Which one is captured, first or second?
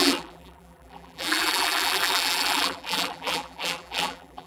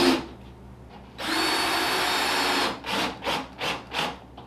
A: second